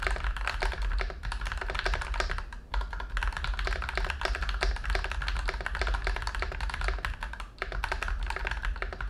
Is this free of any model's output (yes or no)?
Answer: yes